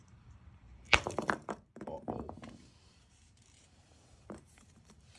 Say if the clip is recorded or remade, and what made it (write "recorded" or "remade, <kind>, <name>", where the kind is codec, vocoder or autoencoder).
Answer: remade, vocoder, BigVGAN v2